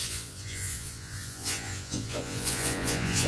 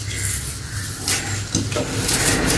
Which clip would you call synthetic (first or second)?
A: first